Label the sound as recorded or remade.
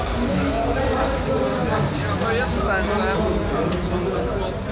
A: recorded